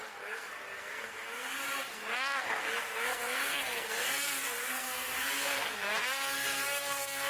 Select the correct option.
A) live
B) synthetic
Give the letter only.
B